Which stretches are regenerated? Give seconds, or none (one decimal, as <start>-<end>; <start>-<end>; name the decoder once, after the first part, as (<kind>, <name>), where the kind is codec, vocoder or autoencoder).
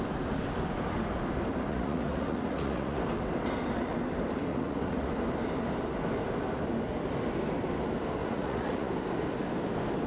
1.7-3.0 (vocoder, Vocos); 4.5-5.1; 8.2-8.9